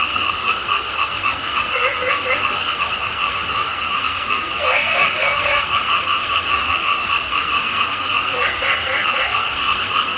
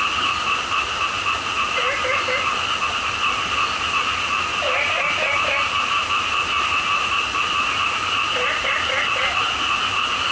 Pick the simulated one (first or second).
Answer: first